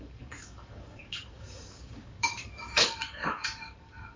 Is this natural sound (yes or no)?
no